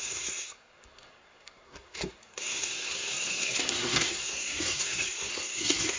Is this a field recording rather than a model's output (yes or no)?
no